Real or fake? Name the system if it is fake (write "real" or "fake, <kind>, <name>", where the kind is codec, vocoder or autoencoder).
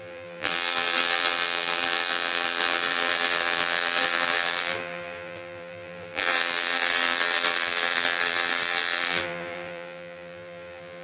fake, vocoder, BigVGAN v2